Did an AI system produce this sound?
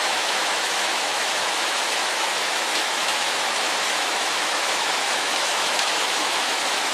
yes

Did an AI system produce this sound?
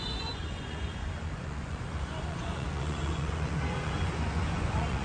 yes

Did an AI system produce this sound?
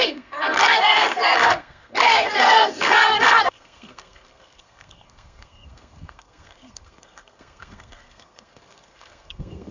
yes